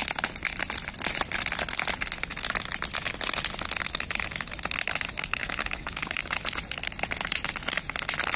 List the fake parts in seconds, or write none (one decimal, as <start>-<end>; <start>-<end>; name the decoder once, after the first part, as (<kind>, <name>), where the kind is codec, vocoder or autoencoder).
5.4-6.2 (codec, DAC)